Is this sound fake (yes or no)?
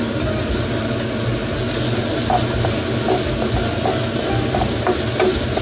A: no